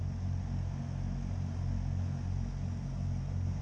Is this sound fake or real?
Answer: real